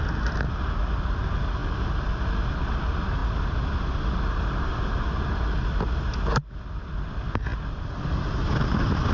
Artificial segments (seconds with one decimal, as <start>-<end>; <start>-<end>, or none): none